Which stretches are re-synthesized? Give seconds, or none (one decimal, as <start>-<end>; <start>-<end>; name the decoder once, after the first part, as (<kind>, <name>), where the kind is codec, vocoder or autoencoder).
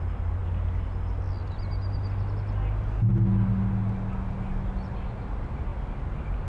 none